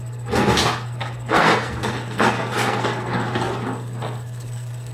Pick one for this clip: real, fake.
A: fake